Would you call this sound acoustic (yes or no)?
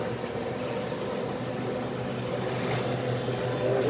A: yes